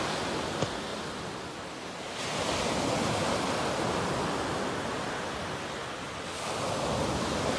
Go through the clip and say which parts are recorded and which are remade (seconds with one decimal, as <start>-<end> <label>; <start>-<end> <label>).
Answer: 0.0-7.6 recorded

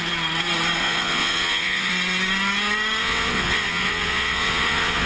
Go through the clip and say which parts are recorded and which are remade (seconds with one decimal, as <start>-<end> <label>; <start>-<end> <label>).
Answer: 0.0-0.8 recorded; 0.8-1.9 remade; 1.9-3.0 recorded; 3.0-5.1 remade

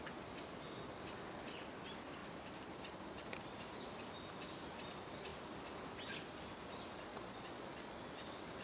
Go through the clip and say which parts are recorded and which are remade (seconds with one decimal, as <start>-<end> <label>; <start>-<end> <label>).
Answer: 0.0-7.1 recorded; 7.1-8.0 remade; 8.0-8.6 recorded

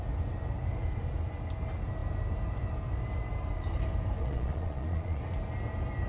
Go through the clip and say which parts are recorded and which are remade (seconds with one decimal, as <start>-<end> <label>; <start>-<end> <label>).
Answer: 0.0-4.2 recorded; 4.2-5.2 remade; 5.2-6.1 recorded